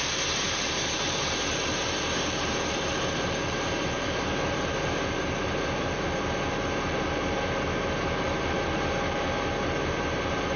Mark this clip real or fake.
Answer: fake